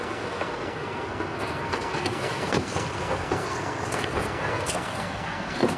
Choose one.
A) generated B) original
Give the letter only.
A